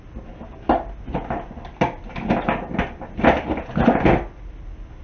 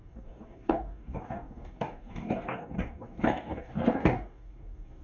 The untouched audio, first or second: first